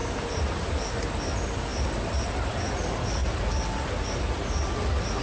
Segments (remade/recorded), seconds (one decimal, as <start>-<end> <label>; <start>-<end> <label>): 0.0-0.6 remade; 0.6-5.2 recorded